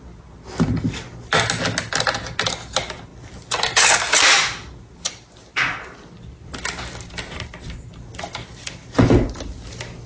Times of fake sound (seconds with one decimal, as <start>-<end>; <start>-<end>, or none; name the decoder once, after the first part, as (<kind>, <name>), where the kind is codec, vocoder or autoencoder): none

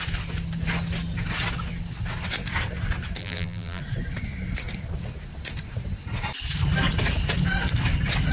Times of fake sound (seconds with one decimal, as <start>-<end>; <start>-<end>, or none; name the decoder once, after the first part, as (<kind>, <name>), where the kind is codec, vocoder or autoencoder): 3.2-3.8 (vocoder, BigVGAN v2)

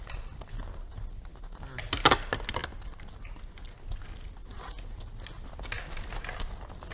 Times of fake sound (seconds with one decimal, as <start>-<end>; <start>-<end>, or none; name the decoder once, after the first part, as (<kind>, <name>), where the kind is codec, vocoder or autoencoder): none

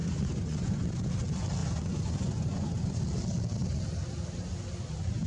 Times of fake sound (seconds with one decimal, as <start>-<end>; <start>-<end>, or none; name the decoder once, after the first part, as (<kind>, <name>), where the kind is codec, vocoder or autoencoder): 0.0-0.9 (vocoder, Vocos); 1.6-3.0

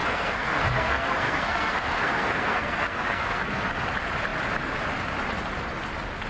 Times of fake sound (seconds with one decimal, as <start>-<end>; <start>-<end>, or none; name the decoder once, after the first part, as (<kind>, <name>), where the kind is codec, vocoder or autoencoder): 0.0-3.8 (codec, SNAC)

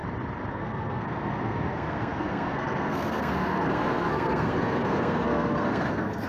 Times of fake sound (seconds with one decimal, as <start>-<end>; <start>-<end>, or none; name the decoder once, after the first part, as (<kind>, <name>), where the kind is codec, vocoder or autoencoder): 0.5-6.3 (codec, SNAC)